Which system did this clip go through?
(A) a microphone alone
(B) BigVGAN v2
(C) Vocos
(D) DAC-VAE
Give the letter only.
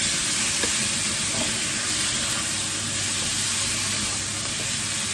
A